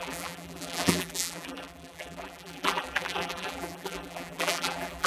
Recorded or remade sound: remade